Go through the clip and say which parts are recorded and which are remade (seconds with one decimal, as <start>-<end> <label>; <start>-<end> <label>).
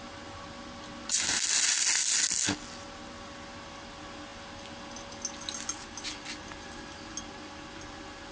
0.0-8.3 recorded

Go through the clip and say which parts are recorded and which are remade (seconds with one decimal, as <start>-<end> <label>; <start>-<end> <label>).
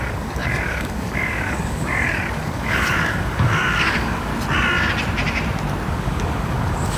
0.0-4.3 remade; 4.3-5.9 recorded; 5.9-7.0 remade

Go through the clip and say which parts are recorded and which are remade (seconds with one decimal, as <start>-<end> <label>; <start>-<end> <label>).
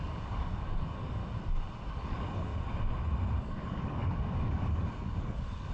0.0-1.2 remade; 1.2-1.9 recorded; 1.9-2.5 remade; 2.5-3.4 recorded; 3.4-5.7 remade